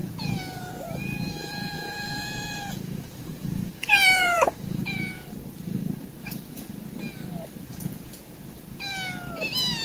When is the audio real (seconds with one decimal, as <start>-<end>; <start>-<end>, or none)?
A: 0.7-1.4; 5.3-6.2; 6.7-7.7; 8.2-9.8

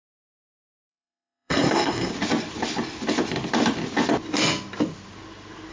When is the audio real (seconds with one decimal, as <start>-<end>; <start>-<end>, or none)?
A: 2.1-5.7

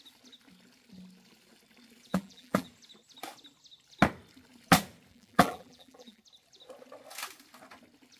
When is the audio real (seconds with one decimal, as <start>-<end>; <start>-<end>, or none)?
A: 0.0-2.1; 2.7-5.1; 6.2-8.2

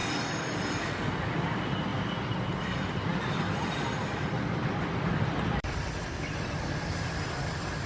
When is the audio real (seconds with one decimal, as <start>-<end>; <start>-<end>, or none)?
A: 0.0-1.9; 6.6-7.9